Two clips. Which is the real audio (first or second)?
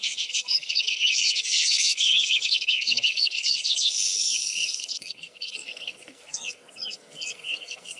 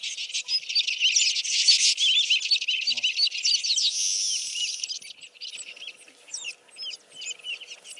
second